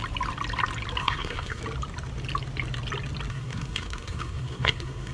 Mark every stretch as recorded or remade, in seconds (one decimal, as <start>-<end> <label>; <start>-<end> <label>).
0.0-1.0 recorded; 1.0-1.6 remade; 1.6-3.3 recorded; 3.3-5.1 remade